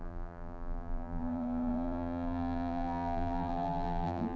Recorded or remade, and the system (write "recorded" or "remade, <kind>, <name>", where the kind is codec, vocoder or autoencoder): remade, vocoder, BigVGAN v2